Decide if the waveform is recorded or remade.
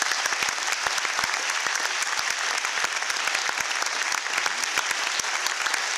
recorded